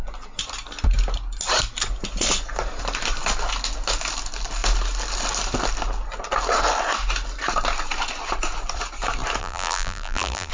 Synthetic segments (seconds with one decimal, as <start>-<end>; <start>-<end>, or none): 9.4-10.5